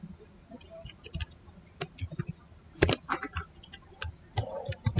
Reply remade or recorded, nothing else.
recorded